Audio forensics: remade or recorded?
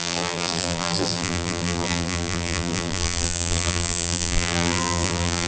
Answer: remade